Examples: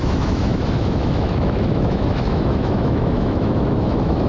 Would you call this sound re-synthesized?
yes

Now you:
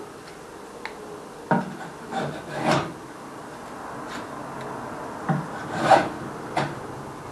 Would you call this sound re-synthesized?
no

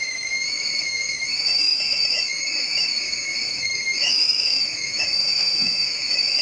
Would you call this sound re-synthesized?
yes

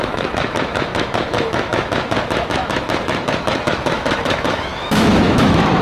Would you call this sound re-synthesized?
yes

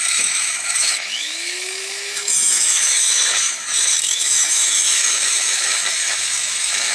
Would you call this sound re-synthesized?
yes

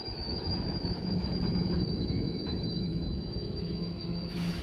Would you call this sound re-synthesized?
yes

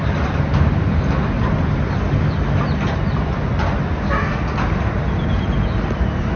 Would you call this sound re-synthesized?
no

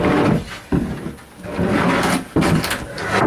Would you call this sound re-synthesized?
no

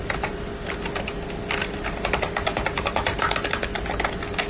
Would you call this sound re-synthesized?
no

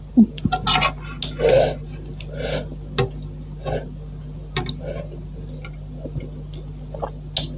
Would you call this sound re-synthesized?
no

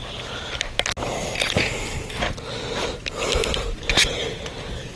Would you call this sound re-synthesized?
no